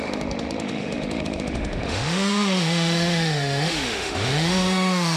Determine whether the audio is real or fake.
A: fake